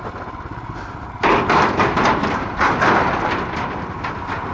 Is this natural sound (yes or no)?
yes